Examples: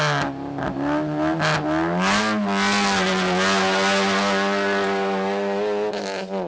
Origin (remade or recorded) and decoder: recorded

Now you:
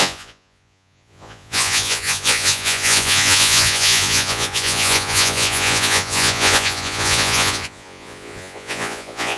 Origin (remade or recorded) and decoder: remade, vocoder, Vocos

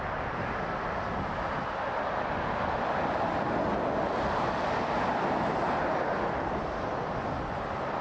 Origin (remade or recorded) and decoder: recorded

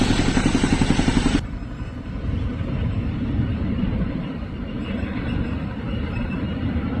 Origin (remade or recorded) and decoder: remade, vocoder, BigVGAN v2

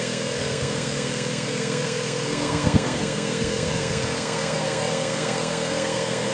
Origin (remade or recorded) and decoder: remade, codec, SNAC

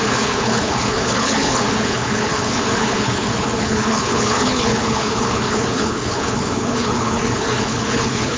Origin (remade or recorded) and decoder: remade, codec, HILCodec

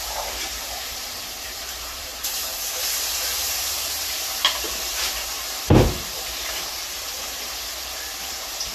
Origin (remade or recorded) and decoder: remade, vocoder, BigVGAN v2